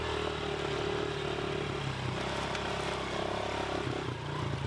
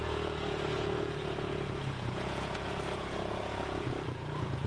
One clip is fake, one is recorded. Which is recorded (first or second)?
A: first